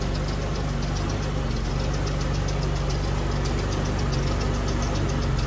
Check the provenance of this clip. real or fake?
real